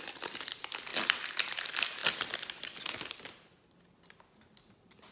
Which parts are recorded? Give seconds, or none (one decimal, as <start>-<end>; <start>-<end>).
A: 0.0-5.1